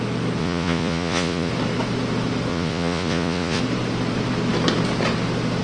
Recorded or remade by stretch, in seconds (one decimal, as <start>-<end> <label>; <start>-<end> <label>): 0.0-0.4 recorded; 0.4-1.5 remade; 1.5-2.5 recorded; 2.5-3.6 remade; 3.6-5.6 recorded